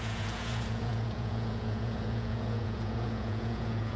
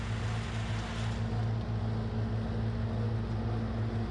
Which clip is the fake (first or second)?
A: first